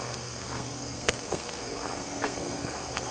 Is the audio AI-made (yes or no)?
yes